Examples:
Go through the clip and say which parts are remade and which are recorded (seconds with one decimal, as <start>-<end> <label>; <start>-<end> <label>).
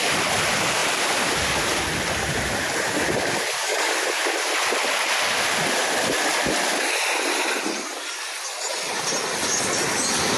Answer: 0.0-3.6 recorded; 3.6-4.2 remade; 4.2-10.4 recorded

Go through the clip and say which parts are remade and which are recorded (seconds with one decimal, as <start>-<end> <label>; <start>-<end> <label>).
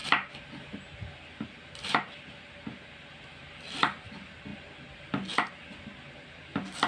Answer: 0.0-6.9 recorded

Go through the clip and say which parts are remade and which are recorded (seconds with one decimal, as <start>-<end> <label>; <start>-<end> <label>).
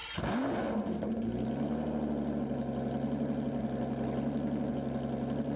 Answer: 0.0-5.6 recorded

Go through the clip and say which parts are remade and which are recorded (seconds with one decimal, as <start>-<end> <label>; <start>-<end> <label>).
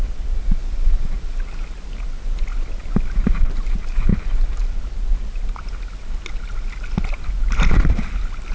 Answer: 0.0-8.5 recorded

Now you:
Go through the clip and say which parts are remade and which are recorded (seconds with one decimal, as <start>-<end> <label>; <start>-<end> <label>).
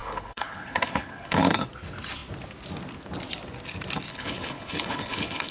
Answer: 0.0-1.7 remade; 1.7-4.1 recorded; 4.1-5.5 remade